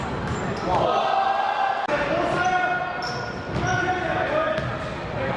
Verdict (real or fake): real